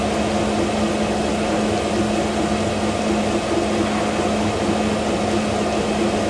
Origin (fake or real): real